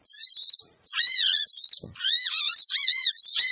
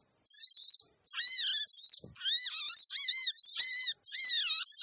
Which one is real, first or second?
second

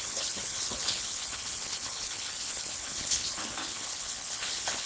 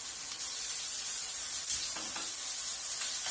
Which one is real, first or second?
second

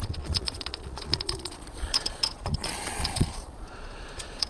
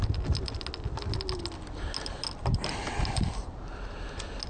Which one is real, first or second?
second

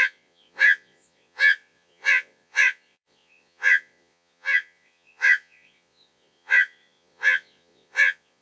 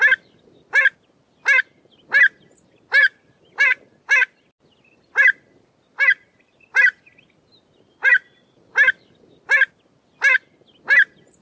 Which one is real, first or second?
second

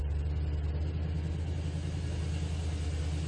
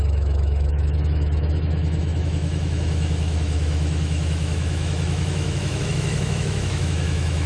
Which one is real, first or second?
first